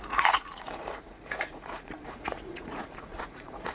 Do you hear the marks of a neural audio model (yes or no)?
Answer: yes